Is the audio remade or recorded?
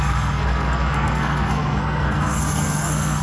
remade